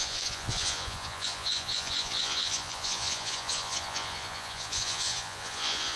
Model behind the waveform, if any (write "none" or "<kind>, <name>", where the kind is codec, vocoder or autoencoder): vocoder, Vocos